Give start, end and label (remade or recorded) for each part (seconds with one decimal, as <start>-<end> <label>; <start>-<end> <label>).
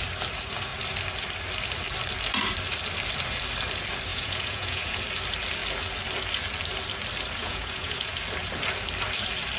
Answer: 0.0-4.1 recorded; 4.1-5.0 remade; 5.0-7.4 recorded; 7.4-8.1 remade; 8.1-9.6 recorded